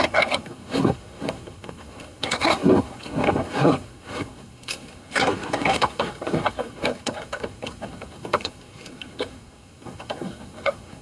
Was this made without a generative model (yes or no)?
no